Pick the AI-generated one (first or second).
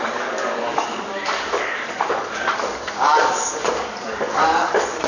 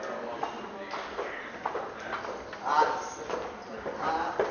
first